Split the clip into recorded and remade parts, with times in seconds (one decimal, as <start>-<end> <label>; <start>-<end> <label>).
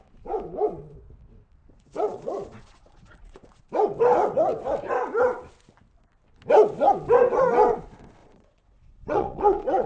0.0-1.6 recorded; 1.6-3.6 remade; 3.6-8.2 recorded; 8.2-9.9 remade